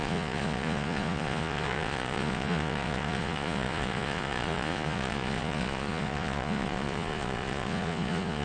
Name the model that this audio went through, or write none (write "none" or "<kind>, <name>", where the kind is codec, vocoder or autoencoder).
vocoder, Vocos